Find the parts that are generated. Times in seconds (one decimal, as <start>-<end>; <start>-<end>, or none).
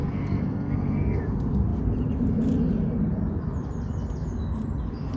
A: 0.0-1.2